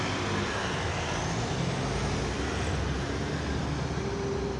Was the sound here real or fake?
real